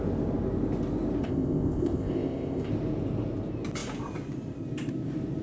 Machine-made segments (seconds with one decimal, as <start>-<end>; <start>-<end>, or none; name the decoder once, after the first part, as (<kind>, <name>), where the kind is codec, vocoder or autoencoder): 1.2-2.7 (codec, ZipCodec)